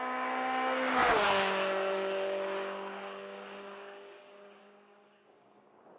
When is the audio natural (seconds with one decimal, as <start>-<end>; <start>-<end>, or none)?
none